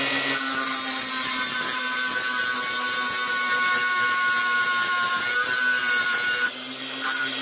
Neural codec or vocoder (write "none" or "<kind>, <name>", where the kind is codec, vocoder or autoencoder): none